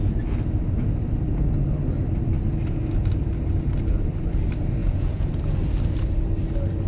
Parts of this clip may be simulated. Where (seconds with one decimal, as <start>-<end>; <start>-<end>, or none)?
4.8-5.4